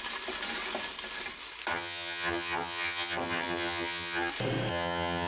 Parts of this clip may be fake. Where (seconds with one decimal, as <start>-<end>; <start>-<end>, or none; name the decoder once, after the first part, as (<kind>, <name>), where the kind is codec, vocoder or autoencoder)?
1.7-4.3 (vocoder, HiFi-GAN); 4.7-5.3